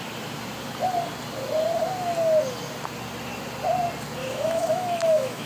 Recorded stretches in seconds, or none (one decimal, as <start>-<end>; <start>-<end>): 0.0-4.2